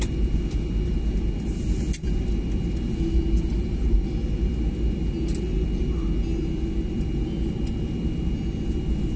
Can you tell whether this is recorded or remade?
recorded